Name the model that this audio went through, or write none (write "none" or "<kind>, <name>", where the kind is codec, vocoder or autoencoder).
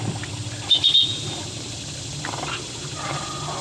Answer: none